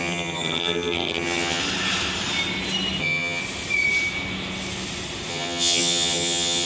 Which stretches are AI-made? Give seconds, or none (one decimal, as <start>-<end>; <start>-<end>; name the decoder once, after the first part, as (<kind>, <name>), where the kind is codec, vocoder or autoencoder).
0.0-1.6 (vocoder, HiFi-GAN); 3.0-3.4; 5.3-6.7